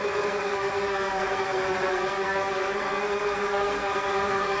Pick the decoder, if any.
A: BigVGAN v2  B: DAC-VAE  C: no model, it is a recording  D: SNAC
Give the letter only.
D